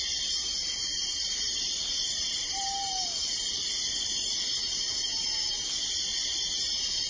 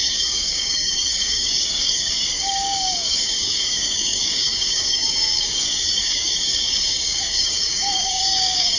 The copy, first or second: second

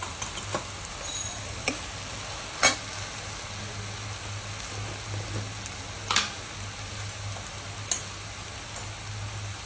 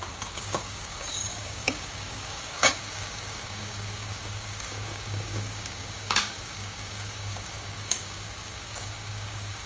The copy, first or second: second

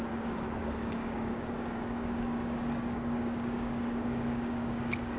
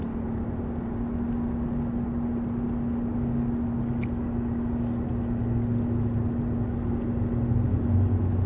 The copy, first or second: first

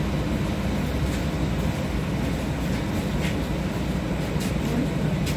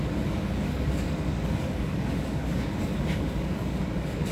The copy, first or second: second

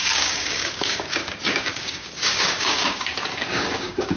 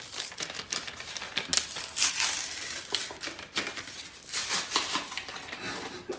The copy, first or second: first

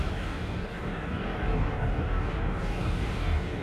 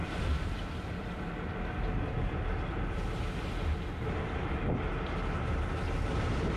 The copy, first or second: first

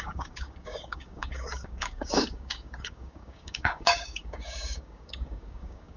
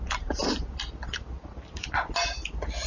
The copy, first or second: first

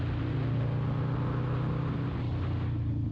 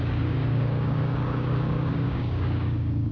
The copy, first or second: second